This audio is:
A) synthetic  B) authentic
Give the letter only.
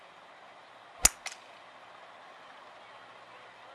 B